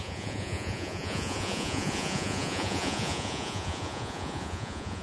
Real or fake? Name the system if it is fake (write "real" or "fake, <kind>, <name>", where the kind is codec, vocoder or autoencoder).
fake, vocoder, Vocos